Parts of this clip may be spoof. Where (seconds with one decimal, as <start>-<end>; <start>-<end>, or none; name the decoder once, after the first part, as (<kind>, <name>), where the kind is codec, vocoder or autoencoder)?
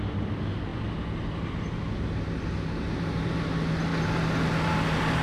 none